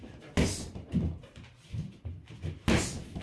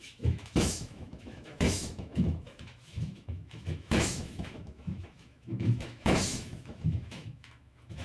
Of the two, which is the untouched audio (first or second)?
first